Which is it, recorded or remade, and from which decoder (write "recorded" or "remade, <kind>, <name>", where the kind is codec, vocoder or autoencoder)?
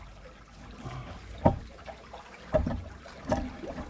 recorded